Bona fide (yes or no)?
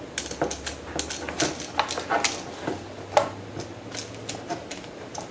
yes